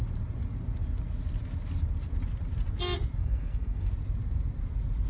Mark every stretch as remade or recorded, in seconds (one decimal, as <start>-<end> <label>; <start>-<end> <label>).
0.0-3.2 recorded; 3.2-3.9 remade; 3.9-5.1 recorded